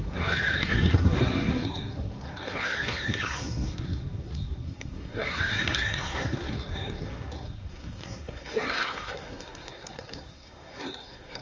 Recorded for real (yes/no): no